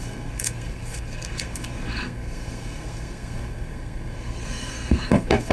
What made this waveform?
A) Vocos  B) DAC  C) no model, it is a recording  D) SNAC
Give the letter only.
D